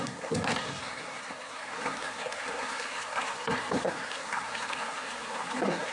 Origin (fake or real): fake